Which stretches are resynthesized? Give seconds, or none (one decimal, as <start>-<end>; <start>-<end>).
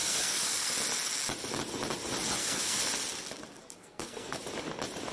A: 0.0-0.7; 2.4-2.9; 3.6-4.4